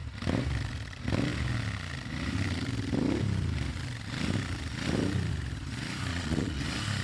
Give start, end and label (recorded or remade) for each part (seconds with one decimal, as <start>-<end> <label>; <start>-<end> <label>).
0.0-6.1 recorded; 6.1-6.6 remade; 6.6-7.0 recorded

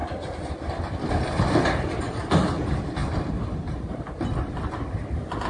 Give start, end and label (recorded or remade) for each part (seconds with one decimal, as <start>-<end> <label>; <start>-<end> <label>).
0.0-5.5 recorded

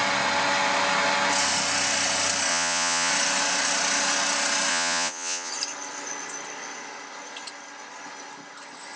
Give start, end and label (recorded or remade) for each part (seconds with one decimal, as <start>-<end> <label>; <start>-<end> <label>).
0.0-2.5 recorded; 2.5-3.1 remade; 3.1-4.7 recorded; 4.7-5.5 remade; 5.5-9.0 recorded

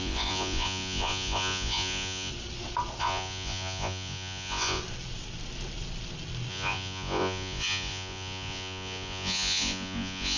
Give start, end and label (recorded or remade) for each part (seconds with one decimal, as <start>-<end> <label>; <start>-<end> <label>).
0.0-2.3 remade; 2.3-3.0 recorded; 3.0-4.8 remade; 4.8-6.5 recorded; 6.5-10.4 remade

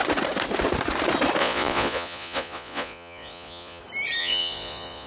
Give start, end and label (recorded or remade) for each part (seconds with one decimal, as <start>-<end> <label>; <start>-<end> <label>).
0.0-1.4 recorded; 1.4-3.8 remade; 3.8-4.2 recorded; 4.2-5.1 remade